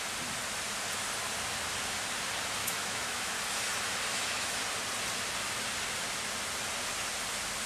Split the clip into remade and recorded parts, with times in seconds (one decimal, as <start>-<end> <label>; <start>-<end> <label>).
0.0-2.6 recorded; 2.6-3.3 remade; 3.3-4.1 recorded; 4.1-4.6 remade; 4.6-7.7 recorded